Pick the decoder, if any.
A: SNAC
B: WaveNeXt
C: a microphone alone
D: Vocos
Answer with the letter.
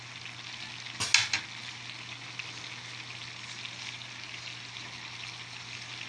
C